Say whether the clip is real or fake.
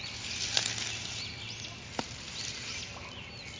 real